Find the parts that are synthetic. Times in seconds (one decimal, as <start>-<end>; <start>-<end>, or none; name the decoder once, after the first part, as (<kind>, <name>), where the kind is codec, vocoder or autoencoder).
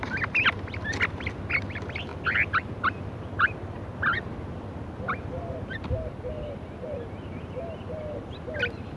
none